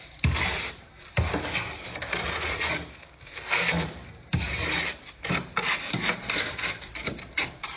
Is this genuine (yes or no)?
no